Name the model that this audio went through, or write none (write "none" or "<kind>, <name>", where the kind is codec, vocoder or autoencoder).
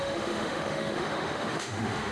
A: autoencoder, DAC-VAE